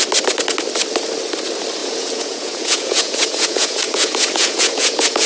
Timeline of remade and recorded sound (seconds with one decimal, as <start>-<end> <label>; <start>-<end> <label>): 0.0-1.8 recorded; 1.8-5.3 remade